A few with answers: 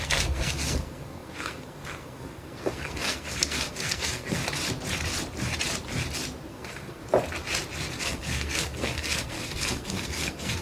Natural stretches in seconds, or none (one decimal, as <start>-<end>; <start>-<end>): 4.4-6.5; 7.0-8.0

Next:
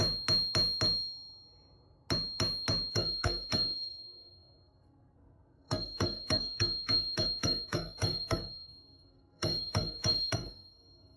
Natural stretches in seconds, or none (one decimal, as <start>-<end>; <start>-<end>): 0.0-2.9

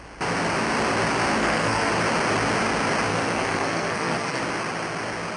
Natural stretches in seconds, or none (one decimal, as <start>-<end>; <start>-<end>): 0.0-1.4; 1.9-3.1; 4.4-5.4